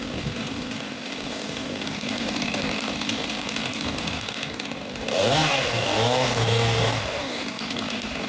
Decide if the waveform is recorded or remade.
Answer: remade